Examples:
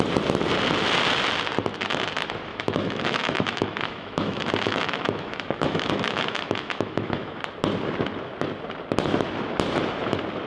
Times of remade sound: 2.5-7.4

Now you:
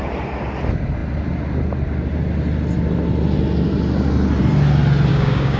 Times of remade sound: 5.1-5.6